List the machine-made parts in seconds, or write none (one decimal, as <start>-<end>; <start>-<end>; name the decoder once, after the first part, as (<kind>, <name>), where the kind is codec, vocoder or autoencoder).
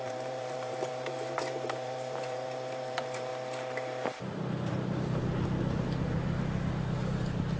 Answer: 0.0-3.3 (vocoder, BigVGAN v2); 7.1-7.6